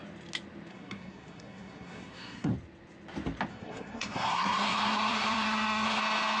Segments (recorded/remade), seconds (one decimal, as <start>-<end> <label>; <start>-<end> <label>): 0.0-0.7 recorded; 0.7-2.5 remade; 2.5-3.5 recorded; 3.5-6.0 remade; 6.0-6.4 recorded